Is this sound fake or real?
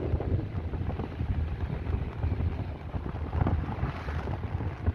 real